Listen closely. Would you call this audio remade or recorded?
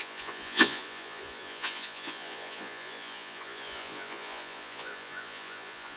remade